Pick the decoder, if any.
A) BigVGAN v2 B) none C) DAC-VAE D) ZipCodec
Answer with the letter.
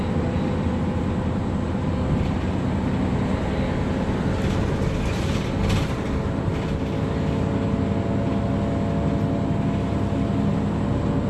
B